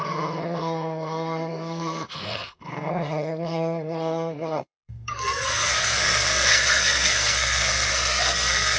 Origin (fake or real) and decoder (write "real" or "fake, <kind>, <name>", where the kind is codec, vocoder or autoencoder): fake, codec, SNAC